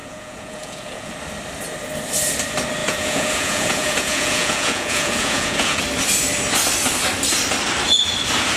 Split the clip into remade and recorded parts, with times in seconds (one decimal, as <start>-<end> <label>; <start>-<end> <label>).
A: 0.0-1.1 remade; 1.1-2.8 recorded; 2.8-5.8 remade; 5.8-8.6 recorded